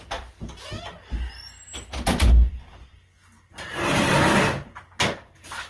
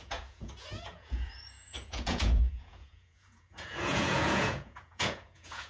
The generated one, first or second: second